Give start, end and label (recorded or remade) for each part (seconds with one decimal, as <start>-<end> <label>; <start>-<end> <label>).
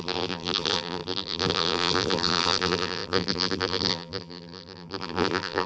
0.0-5.7 remade